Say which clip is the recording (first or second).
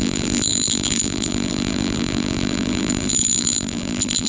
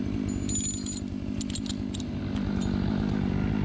second